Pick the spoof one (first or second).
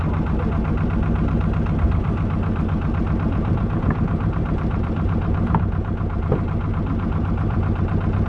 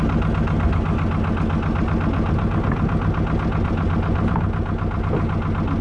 first